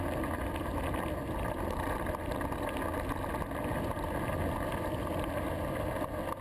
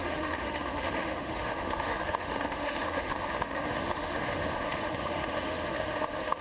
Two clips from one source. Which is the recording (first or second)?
first